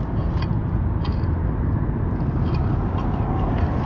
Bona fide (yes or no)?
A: yes